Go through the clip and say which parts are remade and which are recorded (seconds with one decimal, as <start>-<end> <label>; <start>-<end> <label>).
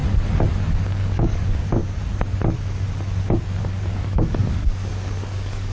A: 0.0-0.7 recorded; 0.7-1.8 remade; 1.8-3.6 recorded; 3.6-5.7 remade